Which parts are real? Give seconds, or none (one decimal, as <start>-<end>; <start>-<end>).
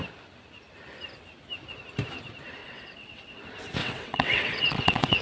0.0-2.6; 3.4-3.8